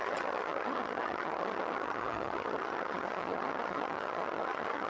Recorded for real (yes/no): no